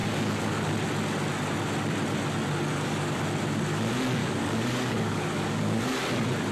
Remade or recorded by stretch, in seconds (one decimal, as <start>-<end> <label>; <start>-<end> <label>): 0.0-0.7 remade; 0.7-2.7 recorded; 2.7-3.2 remade; 3.2-4.2 recorded; 4.2-5.8 remade; 5.8-6.5 recorded